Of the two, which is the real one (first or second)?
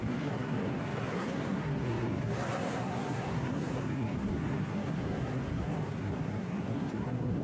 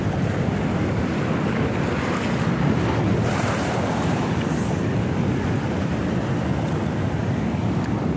second